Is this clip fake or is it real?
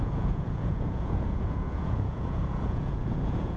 fake